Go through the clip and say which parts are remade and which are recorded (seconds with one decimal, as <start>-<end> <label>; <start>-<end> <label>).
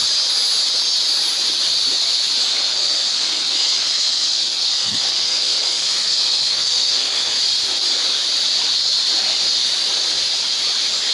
0.0-2.7 recorded; 2.7-7.4 remade; 7.4-11.1 recorded